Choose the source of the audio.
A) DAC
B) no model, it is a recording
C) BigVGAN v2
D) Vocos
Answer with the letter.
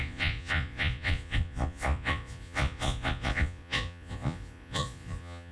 D